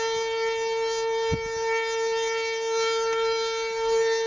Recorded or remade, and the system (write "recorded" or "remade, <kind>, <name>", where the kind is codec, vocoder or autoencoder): recorded